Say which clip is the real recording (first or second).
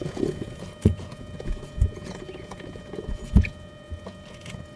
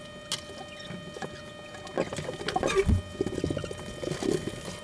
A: second